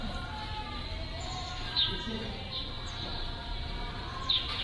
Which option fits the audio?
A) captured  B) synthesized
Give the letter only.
B